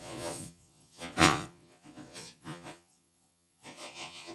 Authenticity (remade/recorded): remade